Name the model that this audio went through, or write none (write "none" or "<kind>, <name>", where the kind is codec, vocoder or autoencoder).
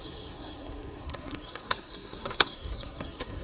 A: codec, SNAC